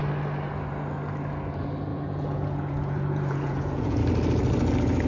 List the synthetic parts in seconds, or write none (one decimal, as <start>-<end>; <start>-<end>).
1.9-4.0